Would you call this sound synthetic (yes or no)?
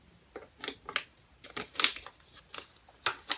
no